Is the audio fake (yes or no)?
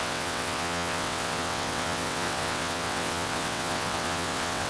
yes